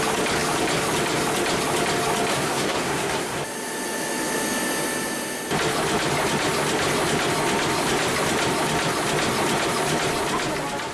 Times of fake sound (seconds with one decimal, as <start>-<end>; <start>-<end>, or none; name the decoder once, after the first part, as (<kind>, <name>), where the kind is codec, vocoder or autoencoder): 2.3-3.4 (codec, SNAC)